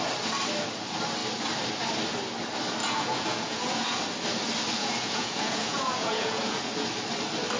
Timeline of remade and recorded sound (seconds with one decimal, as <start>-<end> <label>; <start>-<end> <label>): 0.0-2.8 recorded; 2.8-4.0 remade; 4.0-4.8 recorded; 4.8-6.7 remade; 6.7-7.6 recorded